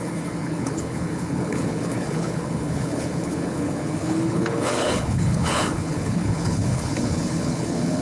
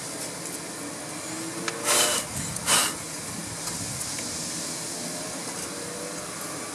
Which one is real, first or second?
second